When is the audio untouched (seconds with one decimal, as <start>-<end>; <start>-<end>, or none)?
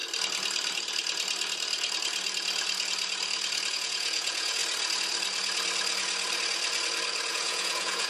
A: 0.0-3.7; 4.6-7.3